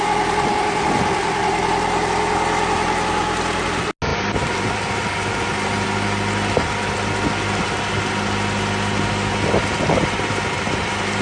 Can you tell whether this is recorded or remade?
recorded